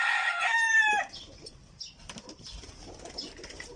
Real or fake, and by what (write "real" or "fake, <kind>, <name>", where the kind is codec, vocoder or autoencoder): real